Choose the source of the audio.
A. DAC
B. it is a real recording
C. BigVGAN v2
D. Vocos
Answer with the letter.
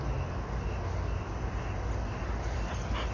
B